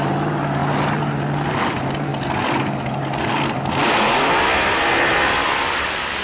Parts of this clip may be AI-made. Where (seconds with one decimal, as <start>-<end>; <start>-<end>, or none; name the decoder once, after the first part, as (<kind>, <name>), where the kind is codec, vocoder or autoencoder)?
none